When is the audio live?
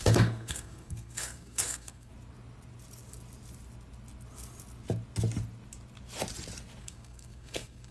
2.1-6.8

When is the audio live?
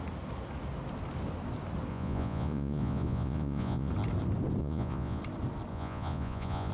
0.0-1.9; 3.9-4.6; 5.2-5.7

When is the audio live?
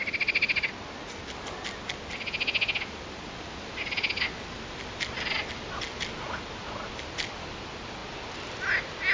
0.0-9.1